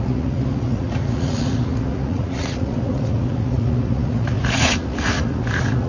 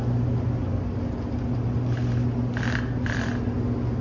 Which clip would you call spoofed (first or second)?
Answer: first